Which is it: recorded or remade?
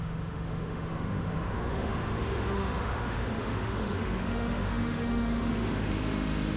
remade